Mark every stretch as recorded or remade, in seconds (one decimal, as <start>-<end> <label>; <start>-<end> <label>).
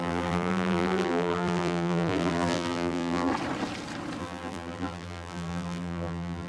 0.0-3.3 remade; 3.3-4.2 recorded; 4.2-6.5 remade